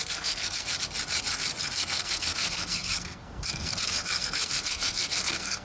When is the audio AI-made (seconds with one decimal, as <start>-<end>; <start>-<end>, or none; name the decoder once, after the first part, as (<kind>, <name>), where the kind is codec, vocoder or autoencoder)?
0.0-0.7 (codec, SNAC); 1.6-5.6